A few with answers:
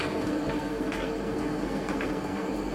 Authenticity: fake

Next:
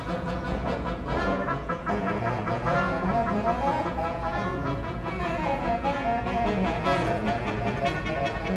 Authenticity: fake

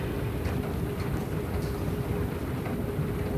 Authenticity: real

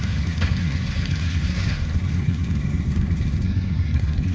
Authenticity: fake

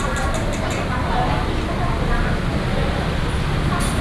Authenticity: real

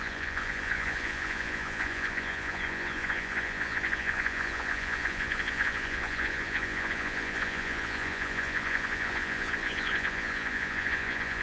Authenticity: fake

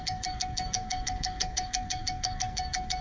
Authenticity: fake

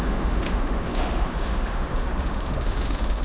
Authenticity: fake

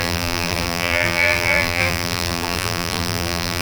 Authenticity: fake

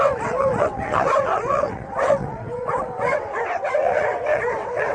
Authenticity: fake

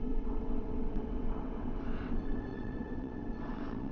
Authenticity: fake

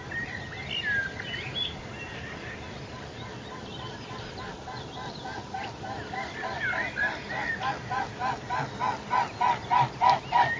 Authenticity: real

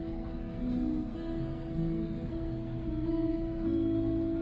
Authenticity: fake